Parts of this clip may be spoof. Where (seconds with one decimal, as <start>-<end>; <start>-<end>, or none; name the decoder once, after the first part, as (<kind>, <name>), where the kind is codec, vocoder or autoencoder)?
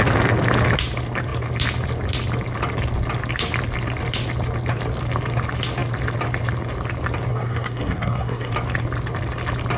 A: 7.3-8.5 (codec, SNAC)